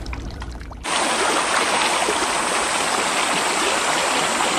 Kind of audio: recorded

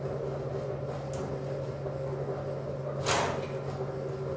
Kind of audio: recorded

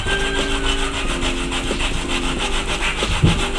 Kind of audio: recorded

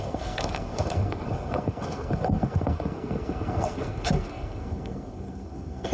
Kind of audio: remade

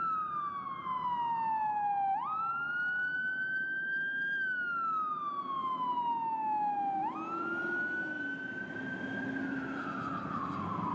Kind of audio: recorded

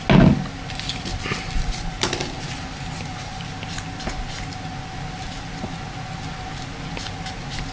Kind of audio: recorded